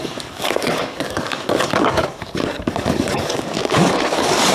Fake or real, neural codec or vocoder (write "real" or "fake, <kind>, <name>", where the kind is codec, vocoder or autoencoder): fake, codec, DAC